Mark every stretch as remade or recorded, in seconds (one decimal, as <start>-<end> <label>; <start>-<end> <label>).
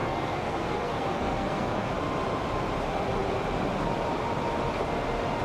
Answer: 0.0-1.9 remade; 1.9-5.4 recorded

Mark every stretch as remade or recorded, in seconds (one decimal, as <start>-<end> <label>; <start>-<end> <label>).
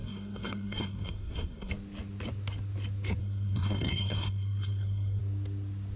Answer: 0.0-1.7 remade; 1.7-3.2 recorded; 3.2-5.2 remade; 5.2-6.0 recorded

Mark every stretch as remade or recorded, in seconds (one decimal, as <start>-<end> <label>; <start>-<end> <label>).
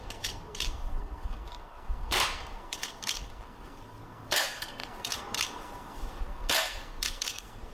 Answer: 0.0-7.7 remade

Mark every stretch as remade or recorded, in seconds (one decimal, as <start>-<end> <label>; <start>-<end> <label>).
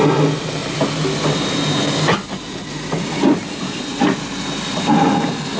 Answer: 0.0-5.6 recorded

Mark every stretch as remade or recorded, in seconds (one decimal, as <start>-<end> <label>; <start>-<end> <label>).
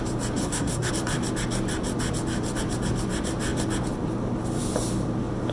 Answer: 0.0-0.4 recorded; 0.4-0.9 remade; 0.9-5.5 recorded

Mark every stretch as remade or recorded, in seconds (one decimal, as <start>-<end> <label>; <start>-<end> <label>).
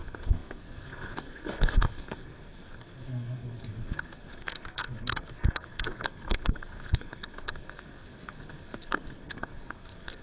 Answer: 0.0-10.2 remade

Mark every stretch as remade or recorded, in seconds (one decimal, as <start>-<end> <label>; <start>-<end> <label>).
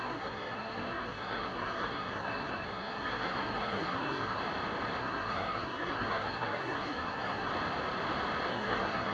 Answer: 0.0-4.4 remade; 4.4-5.0 recorded; 5.0-7.5 remade; 7.5-8.5 recorded; 8.5-9.1 remade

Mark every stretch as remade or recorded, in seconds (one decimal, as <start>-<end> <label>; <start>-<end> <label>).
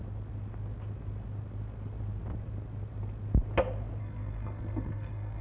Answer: 0.0-4.0 recorded; 4.0-5.4 remade